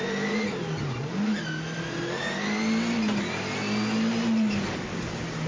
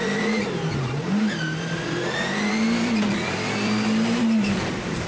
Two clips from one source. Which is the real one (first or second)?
first